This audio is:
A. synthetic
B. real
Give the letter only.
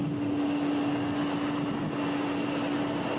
B